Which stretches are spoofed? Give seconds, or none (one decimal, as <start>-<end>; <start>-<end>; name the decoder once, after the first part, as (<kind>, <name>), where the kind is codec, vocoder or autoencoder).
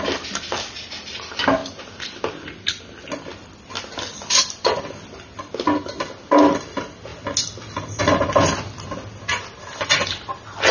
none